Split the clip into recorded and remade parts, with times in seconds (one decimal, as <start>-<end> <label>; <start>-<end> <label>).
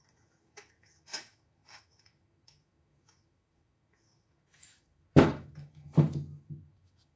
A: 0.0-7.2 remade